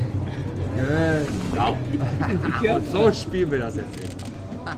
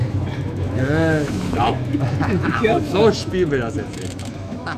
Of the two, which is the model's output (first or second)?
second